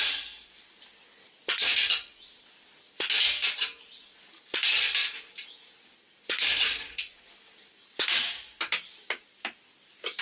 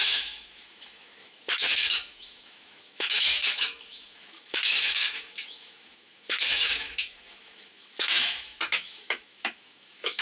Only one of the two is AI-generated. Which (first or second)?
second